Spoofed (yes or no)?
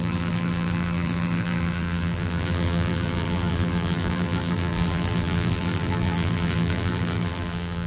yes